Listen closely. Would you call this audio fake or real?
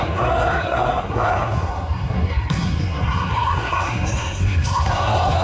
fake